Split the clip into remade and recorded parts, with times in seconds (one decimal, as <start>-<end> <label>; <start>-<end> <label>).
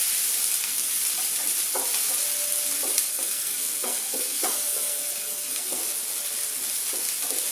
0.0-0.6 recorded; 0.6-1.0 remade; 1.0-3.1 recorded; 3.1-5.8 remade; 5.8-7.5 recorded